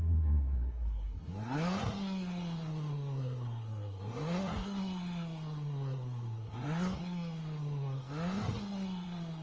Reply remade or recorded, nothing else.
remade